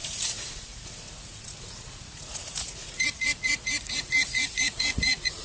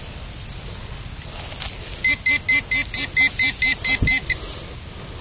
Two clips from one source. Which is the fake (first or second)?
first